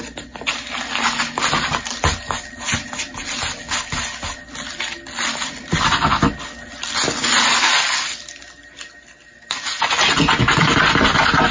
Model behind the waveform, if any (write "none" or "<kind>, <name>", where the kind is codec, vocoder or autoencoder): none